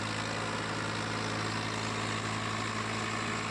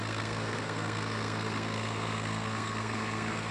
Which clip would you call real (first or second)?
first